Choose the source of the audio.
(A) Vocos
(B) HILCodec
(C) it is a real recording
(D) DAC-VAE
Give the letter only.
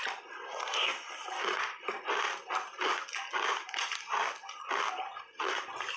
C